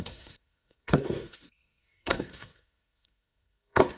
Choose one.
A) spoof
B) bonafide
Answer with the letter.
A